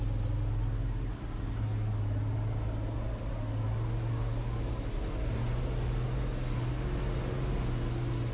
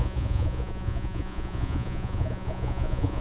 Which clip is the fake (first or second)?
second